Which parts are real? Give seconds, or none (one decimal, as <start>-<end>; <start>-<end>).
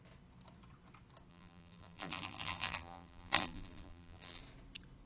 0.0-1.3; 4.4-5.1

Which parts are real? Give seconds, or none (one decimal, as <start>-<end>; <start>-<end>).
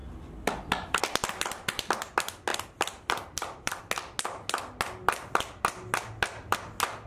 0.0-2.5; 3.8-7.1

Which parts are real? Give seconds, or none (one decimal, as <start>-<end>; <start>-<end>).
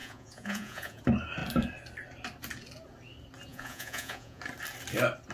1.0-3.5; 4.4-5.3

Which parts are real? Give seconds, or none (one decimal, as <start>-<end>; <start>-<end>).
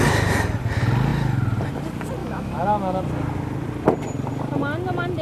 0.0-2.2; 3.0-5.2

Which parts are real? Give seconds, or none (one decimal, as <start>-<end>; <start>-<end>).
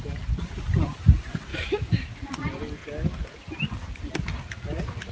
0.0-1.5; 2.2-5.1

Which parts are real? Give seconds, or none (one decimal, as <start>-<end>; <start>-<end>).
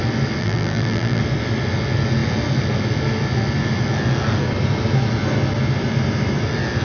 0.0-0.4; 1.2-6.8